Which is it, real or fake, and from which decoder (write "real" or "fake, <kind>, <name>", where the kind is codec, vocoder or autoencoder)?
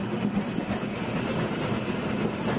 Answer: real